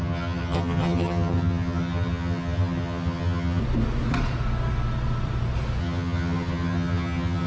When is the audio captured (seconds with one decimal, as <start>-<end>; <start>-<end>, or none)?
3.6-5.8